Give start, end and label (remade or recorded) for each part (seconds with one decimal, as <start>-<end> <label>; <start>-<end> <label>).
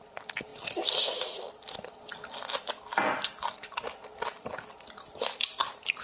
0.0-6.0 recorded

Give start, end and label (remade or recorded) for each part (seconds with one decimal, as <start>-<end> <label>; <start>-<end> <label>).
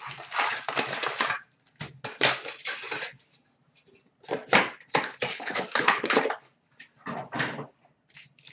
0.0-5.3 recorded; 5.3-6.2 remade; 6.2-8.5 recorded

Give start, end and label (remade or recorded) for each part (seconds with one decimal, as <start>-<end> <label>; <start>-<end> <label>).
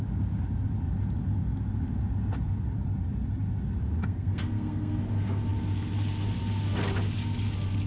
0.0-4.0 recorded; 4.0-5.1 remade; 5.1-7.9 recorded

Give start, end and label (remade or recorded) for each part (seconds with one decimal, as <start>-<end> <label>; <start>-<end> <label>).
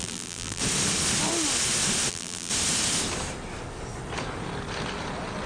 0.0-0.6 remade; 0.6-2.1 recorded; 2.1-2.5 remade; 2.5-5.5 recorded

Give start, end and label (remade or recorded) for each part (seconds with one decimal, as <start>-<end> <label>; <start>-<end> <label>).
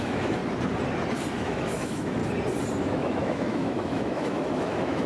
0.0-0.4 remade; 0.4-1.3 recorded; 1.3-2.2 remade; 2.2-2.8 recorded; 2.8-5.1 remade